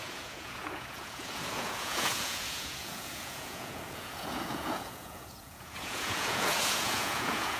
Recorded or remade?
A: remade